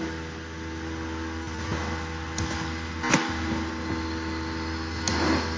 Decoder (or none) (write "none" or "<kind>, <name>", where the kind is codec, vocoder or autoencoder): none